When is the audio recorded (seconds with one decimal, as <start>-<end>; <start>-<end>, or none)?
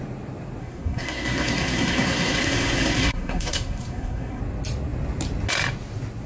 0.0-0.6; 4.4-6.3